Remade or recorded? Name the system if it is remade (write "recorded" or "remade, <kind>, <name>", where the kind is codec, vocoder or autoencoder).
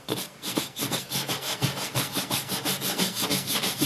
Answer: remade, codec, SNAC